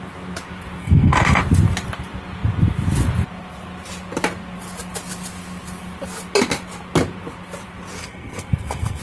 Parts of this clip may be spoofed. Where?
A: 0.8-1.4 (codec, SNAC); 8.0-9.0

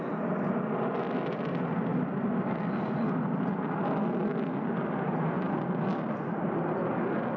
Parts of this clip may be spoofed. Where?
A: 5.9-6.9 (vocoder, BigVGAN v2)

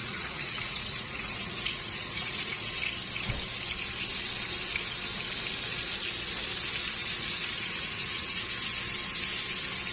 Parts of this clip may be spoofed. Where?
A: 0.0-2.7 (vocoder, Vocos); 7.0-8.4

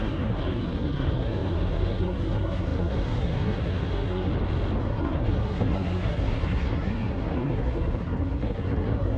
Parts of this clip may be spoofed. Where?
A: 0.0-4.3 (codec, SNAC); 4.8-9.2

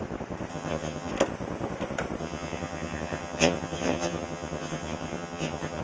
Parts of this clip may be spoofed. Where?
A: 0.5-1.1 (vocoder, HiFi-GAN); 2.2-5.8

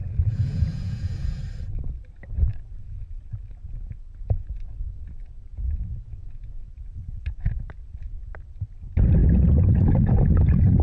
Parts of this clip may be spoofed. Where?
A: 0.0-1.4 (vocoder, Vocos); 5.5-6.7

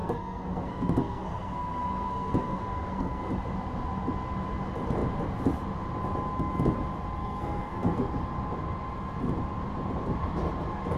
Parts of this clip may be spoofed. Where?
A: 0.0-3.3 (codec, SNAC); 7.2-8.1